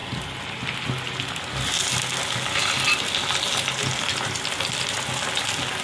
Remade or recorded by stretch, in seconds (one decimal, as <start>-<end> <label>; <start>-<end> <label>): 0.0-5.8 recorded